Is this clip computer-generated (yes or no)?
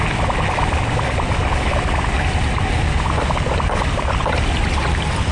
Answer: no